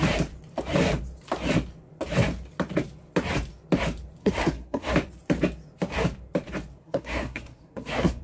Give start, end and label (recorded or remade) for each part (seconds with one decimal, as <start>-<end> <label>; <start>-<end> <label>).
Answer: 0.0-4.2 recorded; 4.2-4.9 remade; 4.9-6.8 recorded; 6.8-8.2 remade